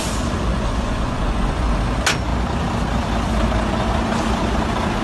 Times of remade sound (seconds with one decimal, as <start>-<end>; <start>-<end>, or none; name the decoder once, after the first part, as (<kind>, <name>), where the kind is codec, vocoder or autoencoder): 0.5-1.7 (vocoder, Vocos)